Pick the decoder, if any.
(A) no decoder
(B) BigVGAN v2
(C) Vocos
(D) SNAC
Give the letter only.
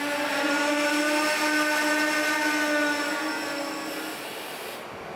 A